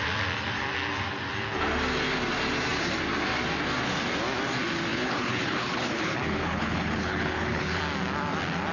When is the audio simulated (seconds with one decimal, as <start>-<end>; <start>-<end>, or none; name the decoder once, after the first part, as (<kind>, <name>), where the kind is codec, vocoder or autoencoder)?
4.9-7.8 (codec, HILCodec)

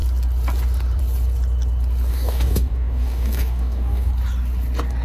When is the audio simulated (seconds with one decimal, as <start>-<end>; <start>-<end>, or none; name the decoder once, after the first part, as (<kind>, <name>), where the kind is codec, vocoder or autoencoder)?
2.1-4.1 (codec, DAC)